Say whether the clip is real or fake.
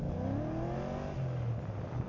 real